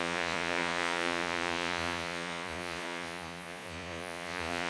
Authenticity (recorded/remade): remade